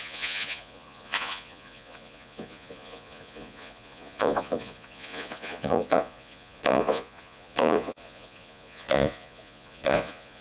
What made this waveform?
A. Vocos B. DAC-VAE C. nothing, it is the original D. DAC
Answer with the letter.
A